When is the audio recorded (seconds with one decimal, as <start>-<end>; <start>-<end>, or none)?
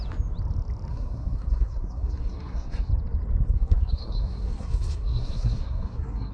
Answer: 0.0-0.9; 2.9-3.5